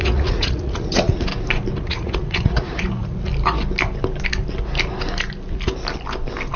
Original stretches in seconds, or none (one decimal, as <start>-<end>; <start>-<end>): 1.3-1.8; 3.3-6.6